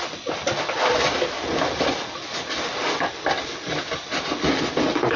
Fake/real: real